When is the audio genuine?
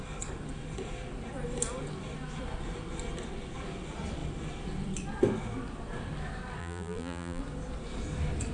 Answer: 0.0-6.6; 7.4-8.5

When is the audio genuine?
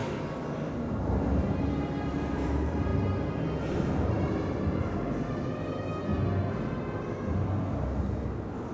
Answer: 0.0-1.0; 2.9-3.6; 6.1-8.7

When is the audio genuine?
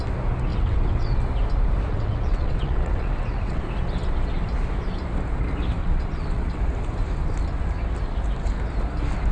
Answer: 0.0-0.5; 1.2-1.9; 3.6-5.8; 6.6-9.3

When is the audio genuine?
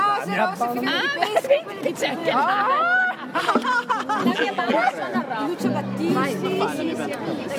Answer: 0.0-4.3; 4.9-7.6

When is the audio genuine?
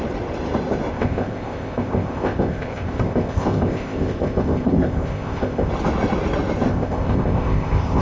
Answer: 0.0-0.9; 5.7-6.7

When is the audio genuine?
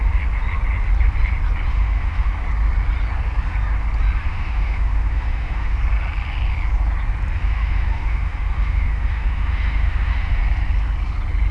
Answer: 0.0-1.7; 2.3-4.3; 5.8-7.4; 10.4-11.5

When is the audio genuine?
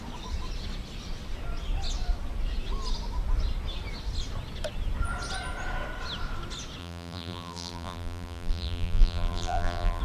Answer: 0.0-6.8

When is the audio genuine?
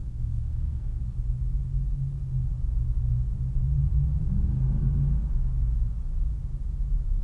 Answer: 1.0-7.2